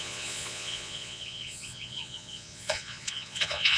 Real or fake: fake